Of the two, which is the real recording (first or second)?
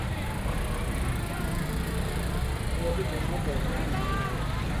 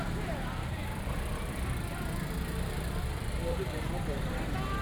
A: first